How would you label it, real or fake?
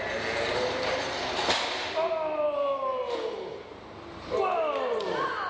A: real